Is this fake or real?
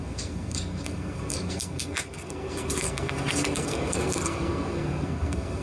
fake